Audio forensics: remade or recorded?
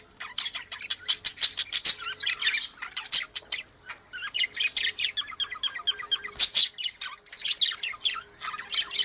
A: recorded